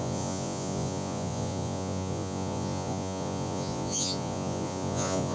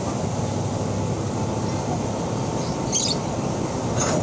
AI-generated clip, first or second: first